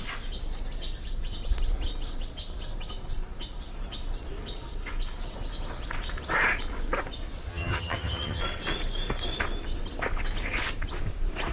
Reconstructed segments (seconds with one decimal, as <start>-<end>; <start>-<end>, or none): 7.5-8.4